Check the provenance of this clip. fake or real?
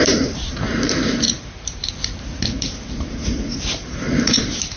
fake